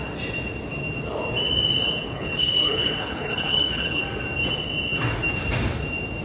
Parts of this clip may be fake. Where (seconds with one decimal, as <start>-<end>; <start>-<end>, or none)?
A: 2.0-4.0